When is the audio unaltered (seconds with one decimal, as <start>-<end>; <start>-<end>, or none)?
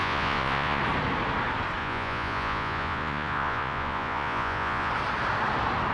0.8-1.8; 4.9-5.9